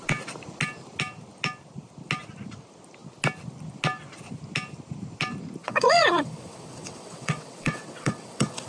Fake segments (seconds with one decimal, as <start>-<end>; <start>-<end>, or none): 5.6-8.7